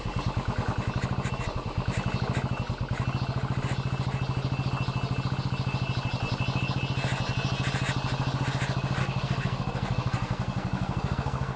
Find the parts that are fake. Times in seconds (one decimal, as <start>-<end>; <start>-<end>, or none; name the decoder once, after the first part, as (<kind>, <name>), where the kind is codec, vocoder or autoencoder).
9.0-11.6 (codec, SNAC)